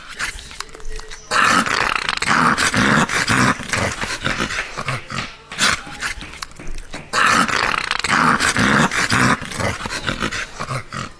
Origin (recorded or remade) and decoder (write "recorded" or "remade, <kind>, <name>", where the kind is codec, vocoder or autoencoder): recorded